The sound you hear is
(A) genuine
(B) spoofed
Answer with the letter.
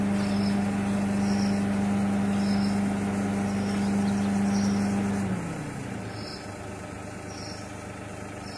A